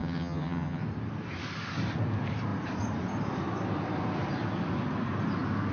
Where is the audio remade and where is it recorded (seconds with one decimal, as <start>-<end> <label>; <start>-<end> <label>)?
0.0-0.8 remade; 0.8-5.7 recorded